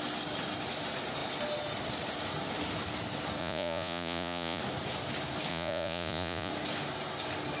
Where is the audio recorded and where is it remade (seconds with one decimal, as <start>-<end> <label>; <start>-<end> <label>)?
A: 0.0-3.4 recorded; 3.4-4.6 remade; 4.6-5.5 recorded; 5.5-6.5 remade; 6.5-7.6 recorded